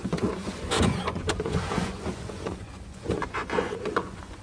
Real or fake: fake